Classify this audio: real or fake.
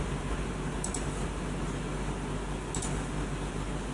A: real